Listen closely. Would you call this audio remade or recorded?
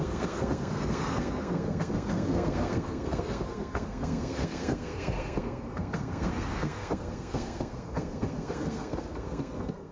remade